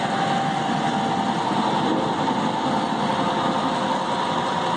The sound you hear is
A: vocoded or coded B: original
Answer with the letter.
B